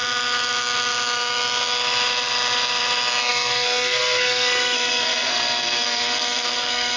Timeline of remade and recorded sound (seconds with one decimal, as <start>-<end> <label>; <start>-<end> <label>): 0.0-3.3 recorded; 3.3-7.0 remade